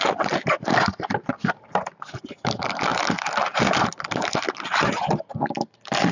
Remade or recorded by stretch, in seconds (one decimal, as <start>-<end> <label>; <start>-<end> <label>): 0.0-6.1 recorded